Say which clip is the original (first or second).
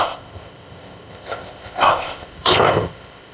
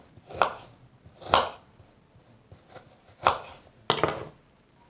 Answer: second